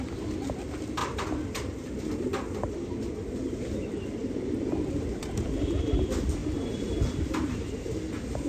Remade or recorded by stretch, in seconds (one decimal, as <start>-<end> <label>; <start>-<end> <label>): 0.0-1.0 recorded; 1.0-2.1 remade; 2.1-4.2 recorded; 4.2-5.5 remade; 5.5-6.4 recorded; 6.4-7.6 remade; 7.6-8.5 recorded